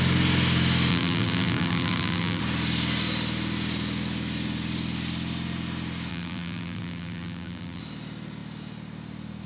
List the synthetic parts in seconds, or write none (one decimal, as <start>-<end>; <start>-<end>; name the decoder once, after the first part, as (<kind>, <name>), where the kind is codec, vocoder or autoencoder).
0.9-2.4 (vocoder, BigVGAN v2); 6.1-7.8